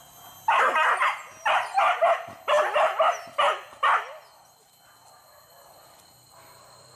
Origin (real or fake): real